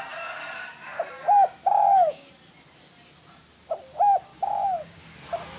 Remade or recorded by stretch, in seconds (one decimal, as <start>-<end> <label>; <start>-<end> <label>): 0.0-1.8 recorded; 1.8-2.3 remade; 2.3-4.3 recorded; 4.3-5.0 remade; 5.0-5.6 recorded